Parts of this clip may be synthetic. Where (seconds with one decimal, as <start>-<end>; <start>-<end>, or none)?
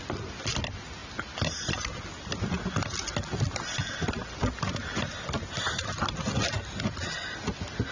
none